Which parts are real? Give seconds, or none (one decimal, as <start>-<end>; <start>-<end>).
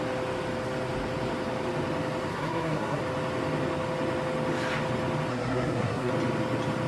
0.0-2.3; 3.0-5.3; 6.1-6.9